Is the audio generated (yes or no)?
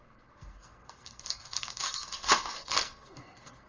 yes